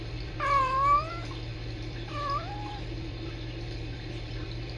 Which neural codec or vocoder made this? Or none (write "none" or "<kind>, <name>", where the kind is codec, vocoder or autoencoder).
vocoder, BigVGAN v2